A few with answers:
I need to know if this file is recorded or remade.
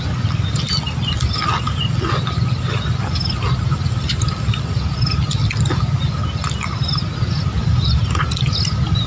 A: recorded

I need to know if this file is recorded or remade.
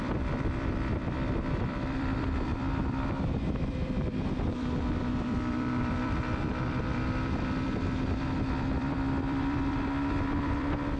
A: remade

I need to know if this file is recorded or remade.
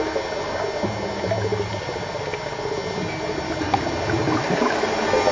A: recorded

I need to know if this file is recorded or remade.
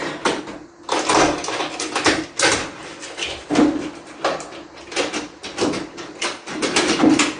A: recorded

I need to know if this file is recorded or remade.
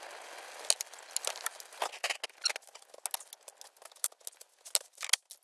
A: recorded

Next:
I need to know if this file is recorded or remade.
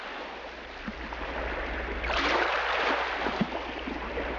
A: recorded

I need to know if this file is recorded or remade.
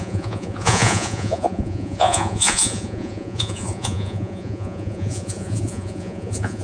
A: remade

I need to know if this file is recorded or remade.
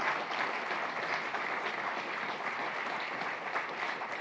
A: recorded